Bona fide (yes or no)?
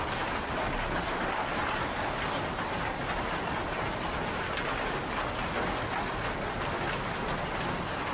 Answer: yes